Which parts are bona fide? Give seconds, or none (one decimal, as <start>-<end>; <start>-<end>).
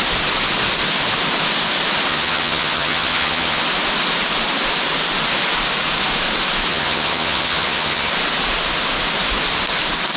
0.0-2.1; 3.6-6.7; 8.1-10.2